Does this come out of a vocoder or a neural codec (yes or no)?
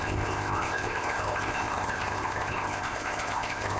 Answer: yes